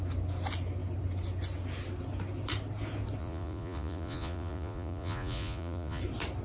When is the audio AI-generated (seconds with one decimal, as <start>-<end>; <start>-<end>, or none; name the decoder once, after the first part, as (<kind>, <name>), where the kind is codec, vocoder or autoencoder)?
3.2-6.0 (vocoder, Vocos)